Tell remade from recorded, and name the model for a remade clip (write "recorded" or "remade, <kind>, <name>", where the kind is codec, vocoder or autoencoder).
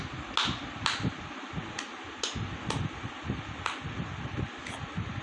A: recorded